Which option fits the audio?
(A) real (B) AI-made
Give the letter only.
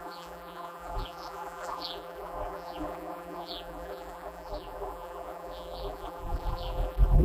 B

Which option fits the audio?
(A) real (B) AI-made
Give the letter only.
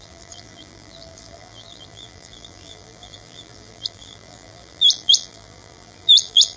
B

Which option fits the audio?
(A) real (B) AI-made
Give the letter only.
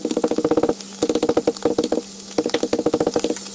A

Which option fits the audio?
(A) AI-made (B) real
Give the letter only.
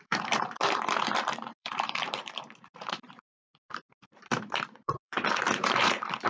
A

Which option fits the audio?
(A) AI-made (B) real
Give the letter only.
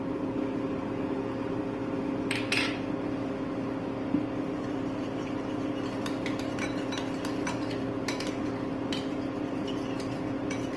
A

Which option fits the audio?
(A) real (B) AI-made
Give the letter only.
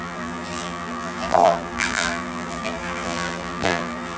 B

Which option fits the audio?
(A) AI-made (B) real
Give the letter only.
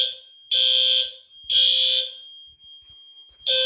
B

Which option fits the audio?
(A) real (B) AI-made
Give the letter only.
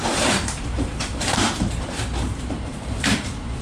B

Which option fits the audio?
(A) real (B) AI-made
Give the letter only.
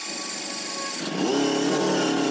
A